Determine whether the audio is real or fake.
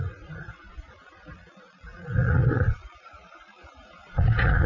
fake